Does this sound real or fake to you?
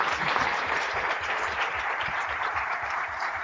fake